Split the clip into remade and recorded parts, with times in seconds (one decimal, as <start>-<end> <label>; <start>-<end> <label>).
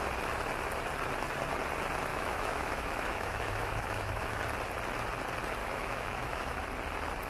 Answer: 0.0-2.1 recorded; 2.1-4.4 remade; 4.4-5.6 recorded; 5.6-6.6 remade; 6.6-7.3 recorded